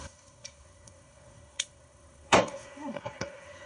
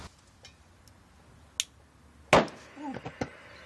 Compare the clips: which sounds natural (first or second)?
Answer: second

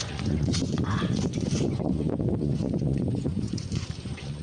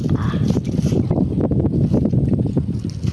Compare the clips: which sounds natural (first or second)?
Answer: second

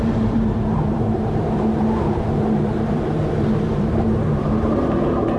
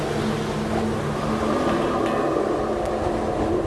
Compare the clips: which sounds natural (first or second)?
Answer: second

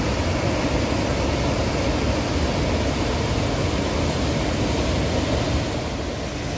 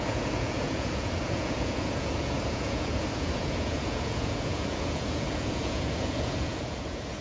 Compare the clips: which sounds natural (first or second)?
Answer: first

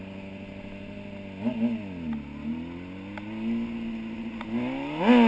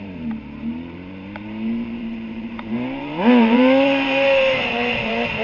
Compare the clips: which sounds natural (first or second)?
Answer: first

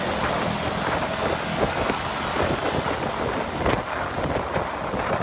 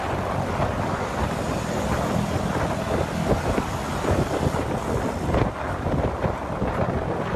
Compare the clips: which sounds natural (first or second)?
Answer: first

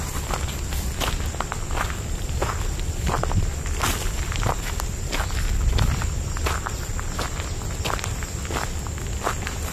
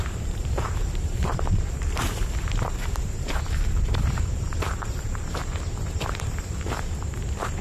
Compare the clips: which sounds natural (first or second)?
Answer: first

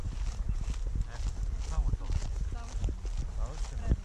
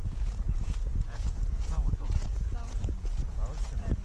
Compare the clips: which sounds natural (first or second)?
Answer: first